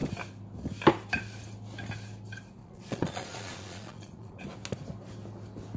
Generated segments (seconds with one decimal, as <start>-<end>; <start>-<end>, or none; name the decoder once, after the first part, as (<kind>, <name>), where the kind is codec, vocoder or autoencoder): 2.6-4.4 (vocoder, Vocos)